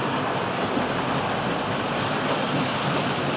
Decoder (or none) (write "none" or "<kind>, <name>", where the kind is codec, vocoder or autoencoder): none